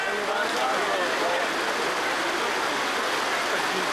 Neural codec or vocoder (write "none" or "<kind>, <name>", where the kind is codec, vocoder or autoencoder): none